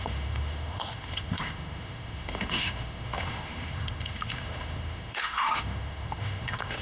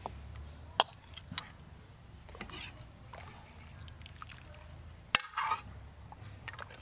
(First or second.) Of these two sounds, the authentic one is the second